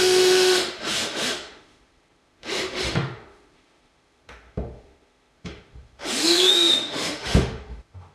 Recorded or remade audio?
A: remade